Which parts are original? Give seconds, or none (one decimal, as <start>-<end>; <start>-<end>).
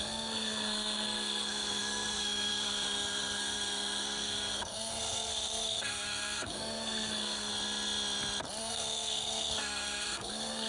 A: 7.5-8.6